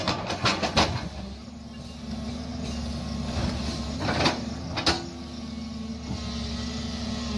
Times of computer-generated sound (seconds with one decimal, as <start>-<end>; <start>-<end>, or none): 0.0-1.1